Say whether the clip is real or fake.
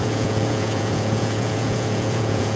fake